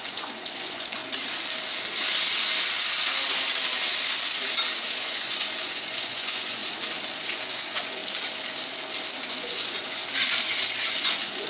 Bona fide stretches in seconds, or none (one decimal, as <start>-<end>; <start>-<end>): 1.0-4.9; 6.6-7.2; 8.0-9.3; 10.0-11.0